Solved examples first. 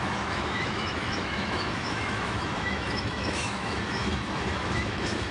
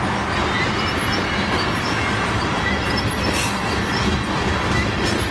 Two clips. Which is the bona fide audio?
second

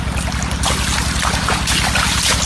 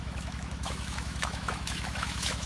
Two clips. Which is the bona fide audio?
first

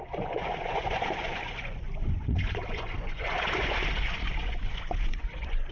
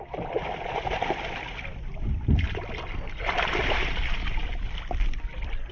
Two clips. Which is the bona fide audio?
second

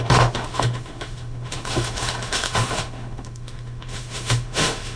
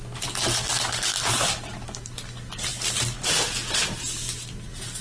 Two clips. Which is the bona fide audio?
second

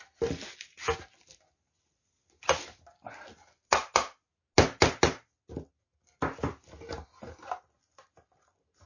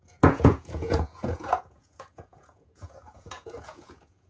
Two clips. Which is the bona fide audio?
first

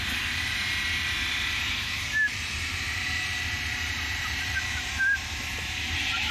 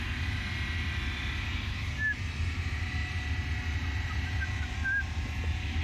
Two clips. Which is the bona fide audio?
second